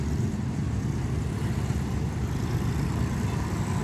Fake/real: real